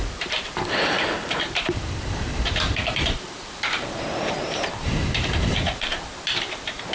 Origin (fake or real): fake